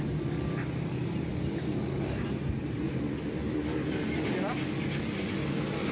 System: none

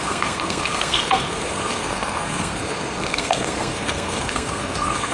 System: codec, SNAC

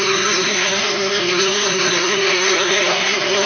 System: codec, SNAC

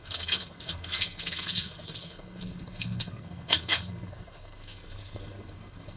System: codec, SNAC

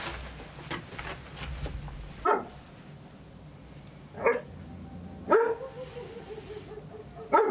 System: none